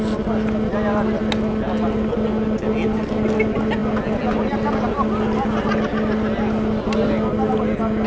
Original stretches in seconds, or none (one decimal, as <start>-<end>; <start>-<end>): 0.0-8.1